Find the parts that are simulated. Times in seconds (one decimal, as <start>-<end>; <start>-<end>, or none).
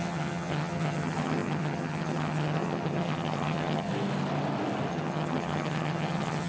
0.0-3.9; 4.9-6.5